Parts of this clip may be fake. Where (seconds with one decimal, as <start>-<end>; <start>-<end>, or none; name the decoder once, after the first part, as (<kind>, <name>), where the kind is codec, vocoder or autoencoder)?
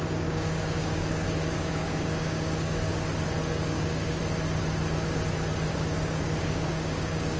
0.0-2.9 (codec, DAC); 3.6-4.2; 5.7-7.4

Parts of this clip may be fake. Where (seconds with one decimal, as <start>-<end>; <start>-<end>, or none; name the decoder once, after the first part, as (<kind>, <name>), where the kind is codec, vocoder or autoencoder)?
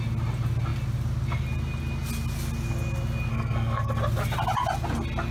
3.3-4.0 (codec, SNAC)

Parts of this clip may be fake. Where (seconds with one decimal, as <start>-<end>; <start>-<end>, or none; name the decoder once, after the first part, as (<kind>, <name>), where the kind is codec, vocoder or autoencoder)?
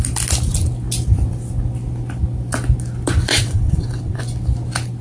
3.3-4.2 (vocoder, WaveNeXt)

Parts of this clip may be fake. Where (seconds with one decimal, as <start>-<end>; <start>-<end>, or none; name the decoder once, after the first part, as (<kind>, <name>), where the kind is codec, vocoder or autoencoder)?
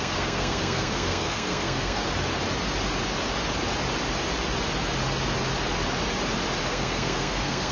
0.0-2.0 (codec, SNAC); 6.6-7.7